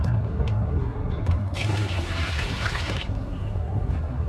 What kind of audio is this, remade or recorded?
remade